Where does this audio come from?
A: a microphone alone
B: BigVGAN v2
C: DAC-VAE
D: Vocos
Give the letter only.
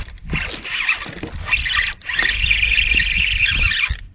A